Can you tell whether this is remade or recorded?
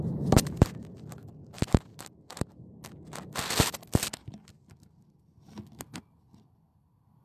recorded